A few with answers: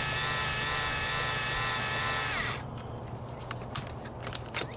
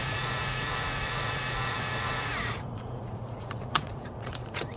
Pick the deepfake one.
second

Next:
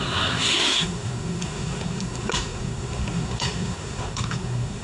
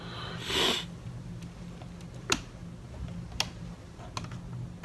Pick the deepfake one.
first